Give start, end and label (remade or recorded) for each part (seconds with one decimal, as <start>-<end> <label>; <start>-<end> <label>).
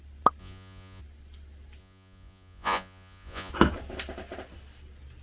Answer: 0.0-0.4 recorded; 0.4-1.0 remade; 1.0-1.8 recorded; 1.8-3.5 remade; 3.5-5.2 recorded